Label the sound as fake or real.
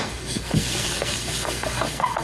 fake